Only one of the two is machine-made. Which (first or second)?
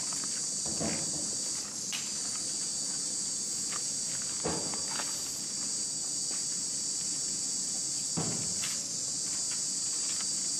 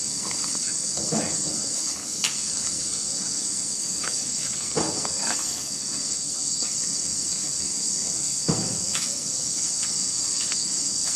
second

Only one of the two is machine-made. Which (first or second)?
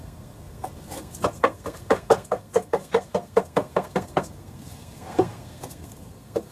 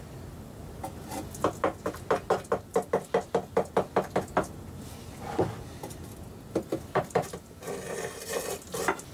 first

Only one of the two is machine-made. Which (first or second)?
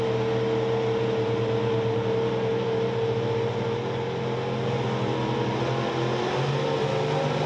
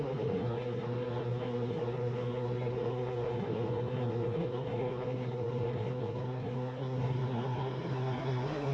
second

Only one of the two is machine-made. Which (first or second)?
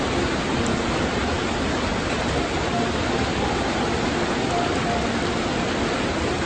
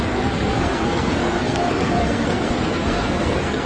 second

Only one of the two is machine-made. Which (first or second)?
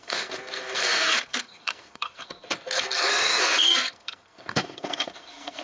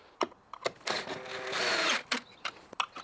first